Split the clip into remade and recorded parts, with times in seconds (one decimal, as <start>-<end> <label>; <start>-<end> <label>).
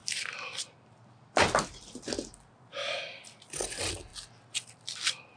0.0-5.4 recorded